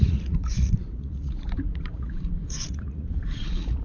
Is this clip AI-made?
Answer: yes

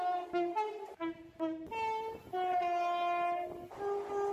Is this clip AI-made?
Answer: no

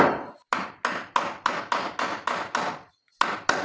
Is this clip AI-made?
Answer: no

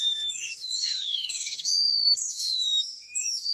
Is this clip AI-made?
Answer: yes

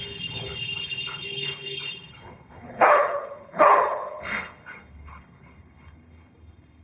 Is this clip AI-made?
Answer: yes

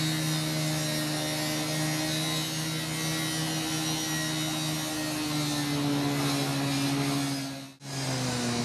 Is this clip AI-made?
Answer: no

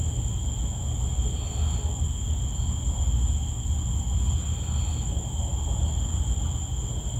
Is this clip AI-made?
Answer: no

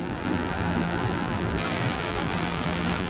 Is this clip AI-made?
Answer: yes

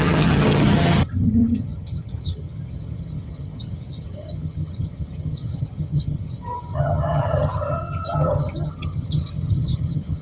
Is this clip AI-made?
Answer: yes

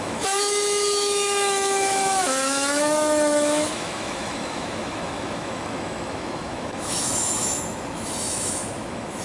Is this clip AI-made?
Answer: yes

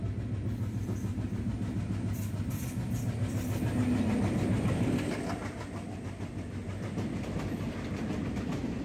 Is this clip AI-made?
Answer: no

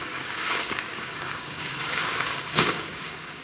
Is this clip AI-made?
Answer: yes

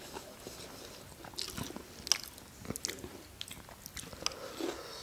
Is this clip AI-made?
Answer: no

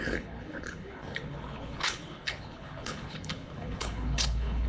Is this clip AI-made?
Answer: yes